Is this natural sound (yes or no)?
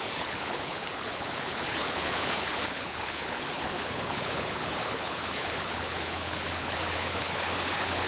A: no